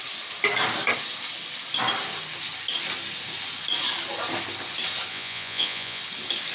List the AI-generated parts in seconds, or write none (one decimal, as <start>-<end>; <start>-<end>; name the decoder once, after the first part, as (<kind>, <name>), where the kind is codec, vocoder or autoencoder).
5.1-6.0 (vocoder, Vocos)